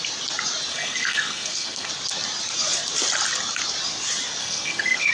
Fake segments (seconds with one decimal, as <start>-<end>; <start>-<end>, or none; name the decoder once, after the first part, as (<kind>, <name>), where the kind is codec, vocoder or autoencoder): 0.7-1.9 (codec, SNAC); 4.4-5.1